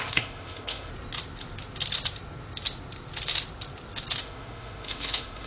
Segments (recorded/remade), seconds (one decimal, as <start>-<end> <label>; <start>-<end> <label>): 0.0-0.9 remade; 0.9-4.2 recorded; 4.2-5.5 remade